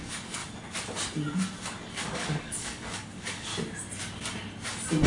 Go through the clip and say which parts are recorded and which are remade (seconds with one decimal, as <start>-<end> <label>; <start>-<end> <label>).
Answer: 0.0-0.4 remade; 0.4-1.9 recorded; 1.9-3.5 remade; 3.5-5.1 recorded